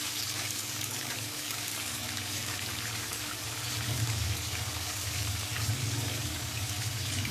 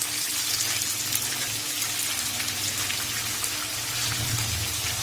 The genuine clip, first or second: second